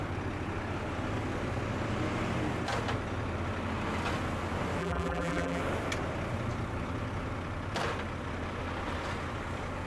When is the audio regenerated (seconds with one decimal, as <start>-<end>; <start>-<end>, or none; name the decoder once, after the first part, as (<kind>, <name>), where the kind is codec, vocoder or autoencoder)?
4.8-5.6 (vocoder, BigVGAN v2)